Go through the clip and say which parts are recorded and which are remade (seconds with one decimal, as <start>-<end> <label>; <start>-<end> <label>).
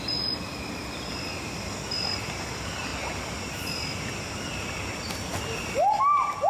0.0-6.5 recorded